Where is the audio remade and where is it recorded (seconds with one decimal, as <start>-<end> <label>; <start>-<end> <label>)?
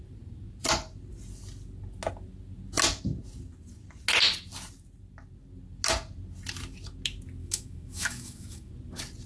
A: 0.0-7.4 recorded; 7.4-8.7 remade; 8.7-9.3 recorded